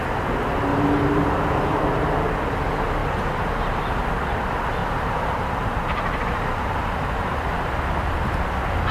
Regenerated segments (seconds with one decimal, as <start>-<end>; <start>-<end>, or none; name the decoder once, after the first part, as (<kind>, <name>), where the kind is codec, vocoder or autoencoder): 0.7-1.8 (vocoder, BigVGAN v2); 3.0-4.0; 4.8-7.6